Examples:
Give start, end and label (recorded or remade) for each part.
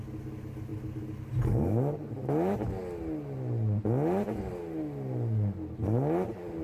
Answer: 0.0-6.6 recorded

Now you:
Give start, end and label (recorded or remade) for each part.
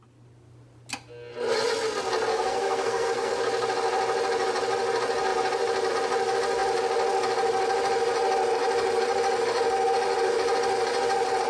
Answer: 0.0-2.3 recorded; 2.3-3.3 remade; 3.3-11.5 recorded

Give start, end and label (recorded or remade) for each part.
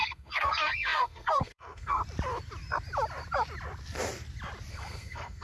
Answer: 0.0-2.0 remade; 2.0-4.7 recorded; 4.7-5.4 remade